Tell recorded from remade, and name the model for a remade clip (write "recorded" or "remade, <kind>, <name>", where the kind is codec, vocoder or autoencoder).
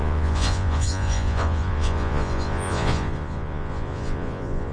remade, vocoder, Vocos